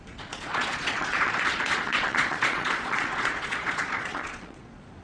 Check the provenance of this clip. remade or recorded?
remade